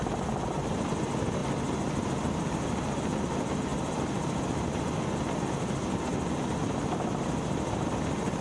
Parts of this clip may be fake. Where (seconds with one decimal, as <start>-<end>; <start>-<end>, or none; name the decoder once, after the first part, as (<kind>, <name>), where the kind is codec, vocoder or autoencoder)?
none